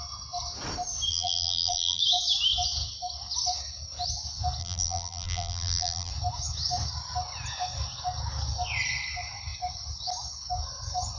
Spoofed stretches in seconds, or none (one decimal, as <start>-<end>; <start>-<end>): 1.1-2.0; 4.6-6.1